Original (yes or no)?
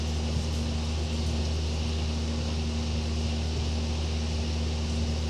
yes